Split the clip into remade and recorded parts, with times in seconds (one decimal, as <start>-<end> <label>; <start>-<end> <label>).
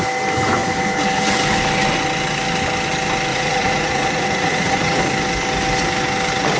0.0-3.3 recorded; 3.3-5.0 remade; 5.0-6.6 recorded